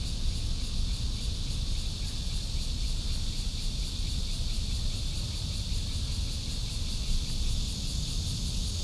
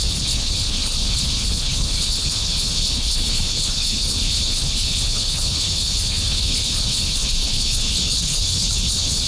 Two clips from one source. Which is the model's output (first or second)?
second